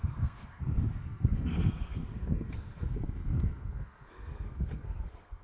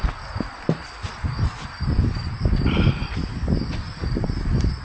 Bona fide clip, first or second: second